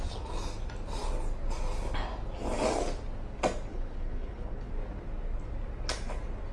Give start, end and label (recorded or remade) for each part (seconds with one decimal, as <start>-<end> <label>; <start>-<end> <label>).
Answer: 0.0-3.7 recorded; 3.7-4.7 remade; 4.7-6.5 recorded